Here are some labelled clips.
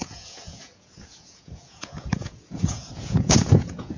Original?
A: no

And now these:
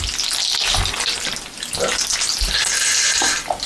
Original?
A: yes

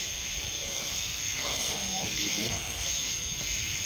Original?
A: no